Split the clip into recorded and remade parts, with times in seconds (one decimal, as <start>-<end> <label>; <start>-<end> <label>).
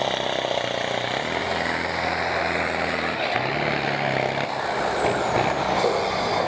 0.0-6.5 recorded